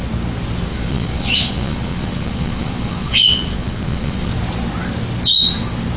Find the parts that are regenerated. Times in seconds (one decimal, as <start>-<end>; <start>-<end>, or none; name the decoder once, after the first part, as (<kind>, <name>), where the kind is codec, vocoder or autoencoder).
0.7-4.3 (vocoder, Vocos)